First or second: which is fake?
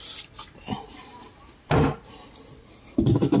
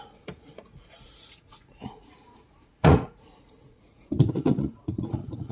second